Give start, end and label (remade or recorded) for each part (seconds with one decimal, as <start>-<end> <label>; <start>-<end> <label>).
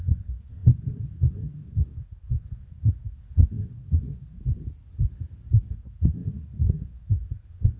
0.0-4.4 remade; 4.4-5.7 recorded; 5.7-7.8 remade